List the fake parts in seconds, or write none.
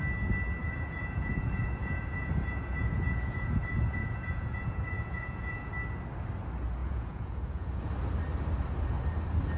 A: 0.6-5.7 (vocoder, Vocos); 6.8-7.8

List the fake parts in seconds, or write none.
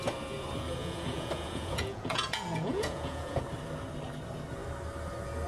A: 0.8-3.4 (vocoder, Vocos)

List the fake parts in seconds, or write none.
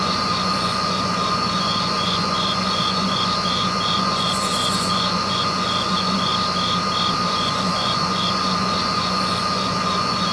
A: 0.0-6.3 (vocoder, Vocos); 7.3-10.3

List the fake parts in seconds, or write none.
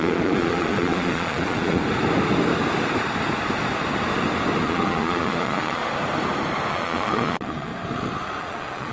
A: 0.0-1.8 (vocoder, Vocos); 4.6-5.8; 6.7-7.7; 8.4-8.9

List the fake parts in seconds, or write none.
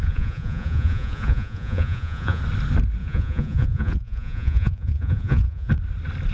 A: 0.0-2.4 (vocoder, Vocos); 3.0-5.7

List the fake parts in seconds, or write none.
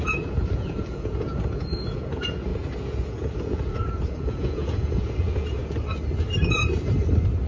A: 0.0-5.6 (vocoder, Vocos)